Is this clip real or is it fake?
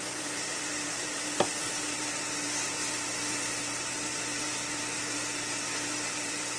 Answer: fake